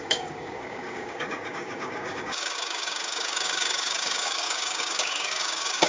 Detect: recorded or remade remade